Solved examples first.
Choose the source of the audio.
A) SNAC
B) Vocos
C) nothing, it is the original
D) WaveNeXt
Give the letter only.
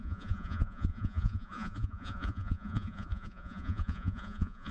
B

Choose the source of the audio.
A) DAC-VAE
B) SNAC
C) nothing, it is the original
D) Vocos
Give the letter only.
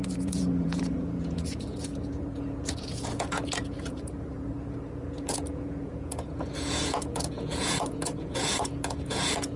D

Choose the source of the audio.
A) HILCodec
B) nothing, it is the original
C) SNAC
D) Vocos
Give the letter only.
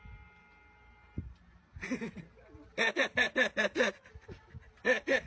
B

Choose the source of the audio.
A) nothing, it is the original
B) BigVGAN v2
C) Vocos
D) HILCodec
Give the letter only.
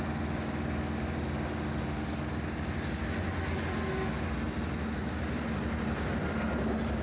A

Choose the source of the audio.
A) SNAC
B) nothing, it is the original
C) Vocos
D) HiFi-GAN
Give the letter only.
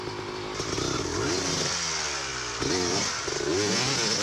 B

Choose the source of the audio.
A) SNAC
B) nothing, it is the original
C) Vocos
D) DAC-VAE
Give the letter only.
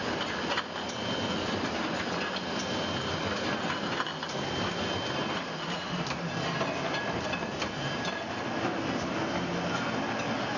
B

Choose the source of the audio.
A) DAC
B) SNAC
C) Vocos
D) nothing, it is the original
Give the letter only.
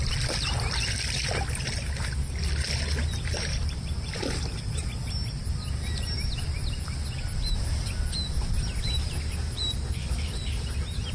D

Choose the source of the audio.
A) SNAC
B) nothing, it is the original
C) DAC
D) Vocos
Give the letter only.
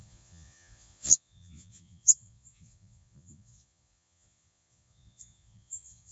D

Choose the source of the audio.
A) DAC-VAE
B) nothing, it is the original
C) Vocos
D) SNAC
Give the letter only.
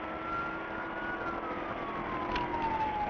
B